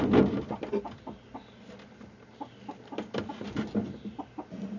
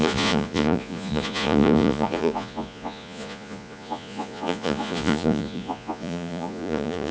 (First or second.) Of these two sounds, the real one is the first